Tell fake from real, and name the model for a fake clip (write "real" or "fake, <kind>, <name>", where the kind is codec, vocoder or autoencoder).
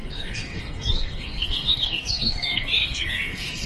fake, codec, SNAC